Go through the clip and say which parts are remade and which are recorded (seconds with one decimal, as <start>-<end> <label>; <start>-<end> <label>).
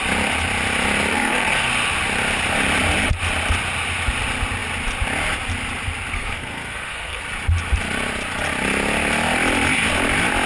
0.0-1.1 recorded; 1.1-1.7 remade; 1.7-6.1 recorded; 6.1-7.2 remade; 7.2-10.5 recorded